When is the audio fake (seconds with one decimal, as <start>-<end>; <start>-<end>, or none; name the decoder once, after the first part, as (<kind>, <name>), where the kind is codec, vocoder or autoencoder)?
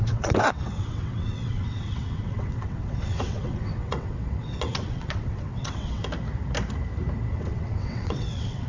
0.0-6.0 (vocoder, WaveNeXt); 7.3-8.7